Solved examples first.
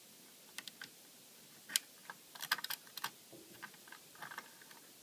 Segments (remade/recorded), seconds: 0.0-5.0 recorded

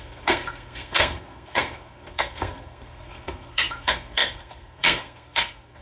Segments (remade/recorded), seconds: 0.0-5.8 remade

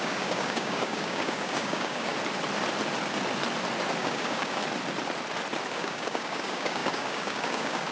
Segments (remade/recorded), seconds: 0.0-2.1 remade; 2.1-4.0 recorded; 4.0-4.6 remade; 4.6-5.7 recorded; 5.7-7.9 remade

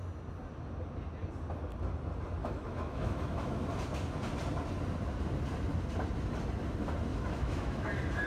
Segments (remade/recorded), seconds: 0.0-2.4 recorded; 2.4-3.6 remade; 3.6-7.1 recorded; 7.1-7.9 remade; 7.9-8.3 recorded

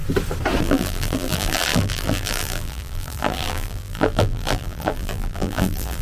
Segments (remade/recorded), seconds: 0.0-0.6 recorded; 0.6-6.0 remade

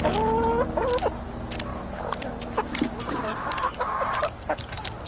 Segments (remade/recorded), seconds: 0.0-1.7 recorded; 1.7-5.1 remade

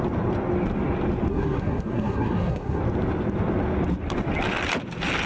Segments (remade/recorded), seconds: 0.0-1.3 recorded; 1.3-2.8 remade; 2.8-5.3 recorded

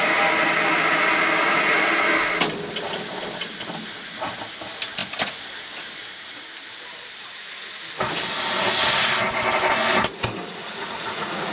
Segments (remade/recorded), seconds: 0.0-10.6 recorded; 10.6-11.5 remade